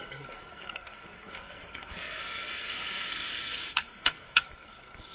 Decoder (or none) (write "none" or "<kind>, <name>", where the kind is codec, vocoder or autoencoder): codec, SNAC